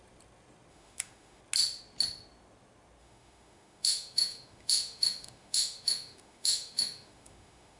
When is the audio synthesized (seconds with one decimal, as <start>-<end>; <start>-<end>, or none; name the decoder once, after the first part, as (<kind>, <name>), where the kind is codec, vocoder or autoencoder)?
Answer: 0.7-1.4 (autoencoder, DAC-VAE); 3.0-7.8